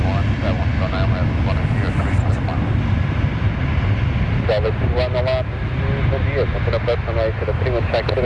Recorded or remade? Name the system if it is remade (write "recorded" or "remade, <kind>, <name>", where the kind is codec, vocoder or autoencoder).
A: recorded